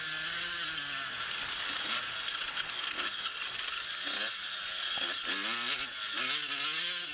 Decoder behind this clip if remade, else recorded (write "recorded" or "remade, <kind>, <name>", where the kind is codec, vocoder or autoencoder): recorded